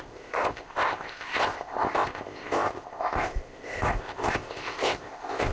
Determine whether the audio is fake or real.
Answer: fake